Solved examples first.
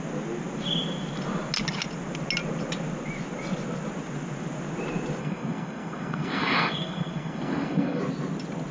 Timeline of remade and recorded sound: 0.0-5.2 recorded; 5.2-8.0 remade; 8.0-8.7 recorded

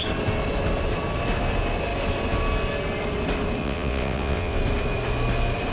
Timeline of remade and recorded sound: 0.0-3.6 recorded; 3.6-4.6 remade; 4.6-5.7 recorded

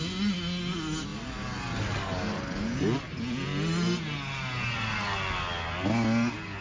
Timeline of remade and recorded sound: 0.0-6.6 recorded